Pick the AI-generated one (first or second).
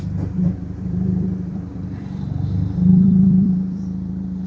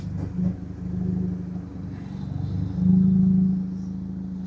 first